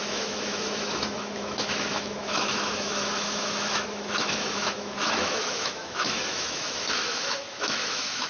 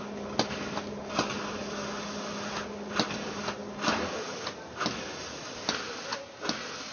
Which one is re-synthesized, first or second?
first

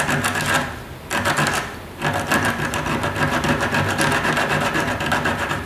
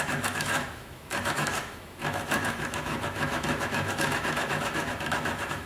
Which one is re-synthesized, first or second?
second